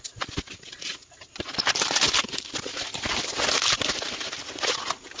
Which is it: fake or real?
real